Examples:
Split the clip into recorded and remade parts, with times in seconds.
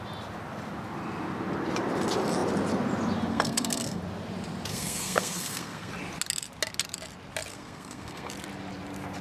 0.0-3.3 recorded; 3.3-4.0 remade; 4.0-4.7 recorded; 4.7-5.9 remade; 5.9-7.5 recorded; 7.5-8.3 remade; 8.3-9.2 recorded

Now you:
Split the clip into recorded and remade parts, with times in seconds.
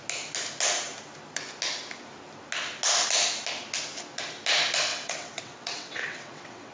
0.0-4.9 recorded; 4.9-6.7 remade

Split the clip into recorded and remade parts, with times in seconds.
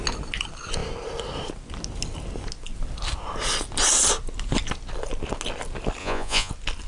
0.0-6.0 recorded; 6.0-6.5 remade; 6.5-6.9 recorded